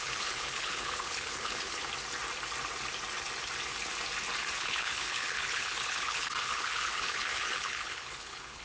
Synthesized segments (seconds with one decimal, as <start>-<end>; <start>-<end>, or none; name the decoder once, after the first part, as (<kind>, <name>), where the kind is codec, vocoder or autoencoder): 0.0-1.8 (codec, HILCodec); 4.6-8.6